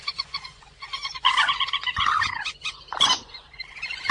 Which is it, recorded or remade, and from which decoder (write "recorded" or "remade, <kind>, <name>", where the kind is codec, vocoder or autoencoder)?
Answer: remade, vocoder, Vocos